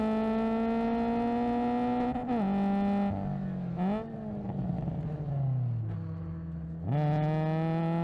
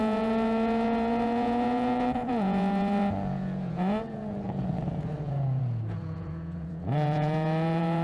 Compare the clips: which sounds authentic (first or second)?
first